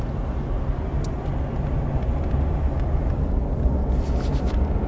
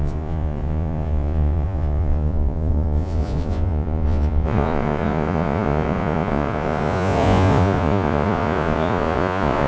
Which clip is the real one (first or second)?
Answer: first